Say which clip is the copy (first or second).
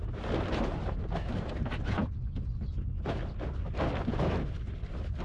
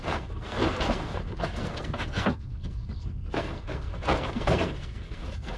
second